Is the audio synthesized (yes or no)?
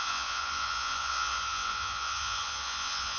yes